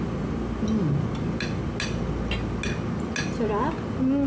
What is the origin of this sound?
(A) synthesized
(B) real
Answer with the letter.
B